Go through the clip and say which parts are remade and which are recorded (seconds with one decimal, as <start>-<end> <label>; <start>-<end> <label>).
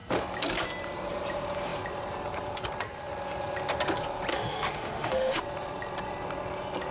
0.0-4.3 recorded; 4.3-5.4 remade; 5.4-6.9 recorded